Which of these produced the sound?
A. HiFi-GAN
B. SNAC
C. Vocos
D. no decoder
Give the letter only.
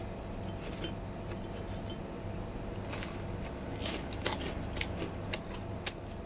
D